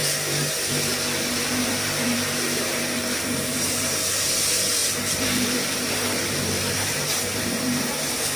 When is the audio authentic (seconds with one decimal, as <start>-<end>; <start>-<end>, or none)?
0.0-1.3